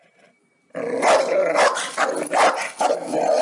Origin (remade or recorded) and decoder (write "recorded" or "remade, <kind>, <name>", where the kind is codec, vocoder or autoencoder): recorded